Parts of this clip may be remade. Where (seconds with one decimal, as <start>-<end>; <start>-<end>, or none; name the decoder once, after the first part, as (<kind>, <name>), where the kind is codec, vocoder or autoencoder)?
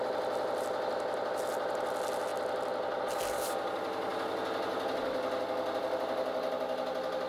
none